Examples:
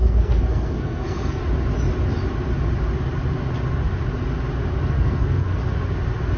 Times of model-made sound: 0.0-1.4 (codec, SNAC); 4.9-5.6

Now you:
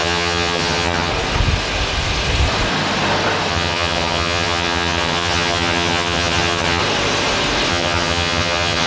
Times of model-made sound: 0.0-1.1 (vocoder, HiFi-GAN); 3.5-6.8; 7.7-8.9

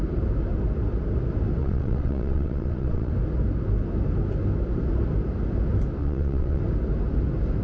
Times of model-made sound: 1.6-3.1 (vocoder, WaveNeXt); 6.0-6.6